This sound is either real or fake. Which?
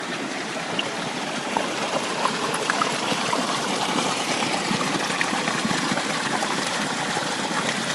fake